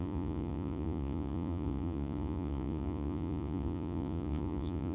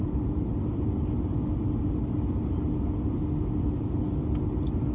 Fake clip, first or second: first